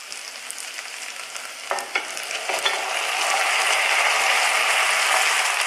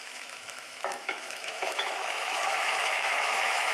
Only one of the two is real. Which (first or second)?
first